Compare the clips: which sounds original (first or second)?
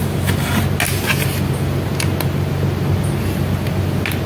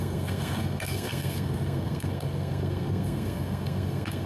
first